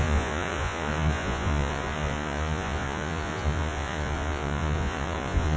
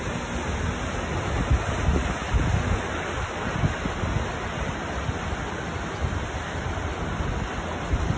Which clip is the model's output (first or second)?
first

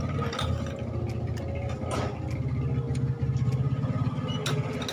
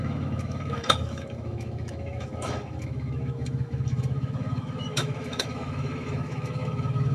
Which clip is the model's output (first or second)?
second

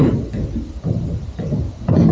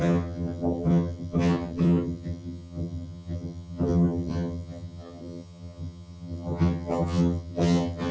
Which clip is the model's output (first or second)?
second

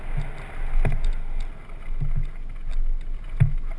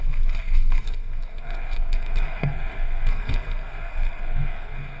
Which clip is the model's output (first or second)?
second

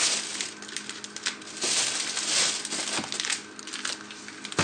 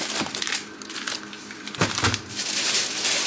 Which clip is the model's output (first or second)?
second